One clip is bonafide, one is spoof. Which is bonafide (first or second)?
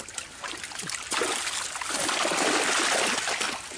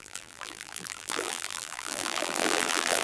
first